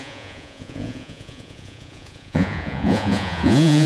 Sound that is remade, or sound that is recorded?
remade